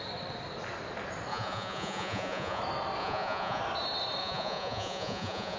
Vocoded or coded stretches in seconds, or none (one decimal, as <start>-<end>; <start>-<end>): 1.3-2.6; 3.0-3.6; 4.2-5.6